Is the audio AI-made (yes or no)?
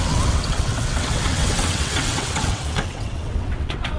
yes